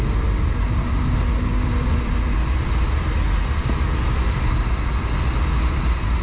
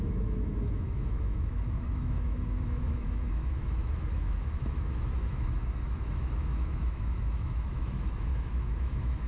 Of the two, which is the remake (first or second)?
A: second